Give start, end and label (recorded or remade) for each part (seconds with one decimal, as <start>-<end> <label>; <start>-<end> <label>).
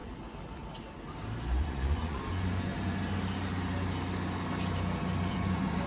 0.0-1.6 recorded; 1.6-2.7 remade; 2.7-5.3 recorded; 5.3-5.9 remade